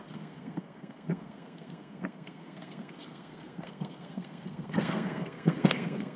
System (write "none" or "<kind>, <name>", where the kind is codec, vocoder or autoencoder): codec, SNAC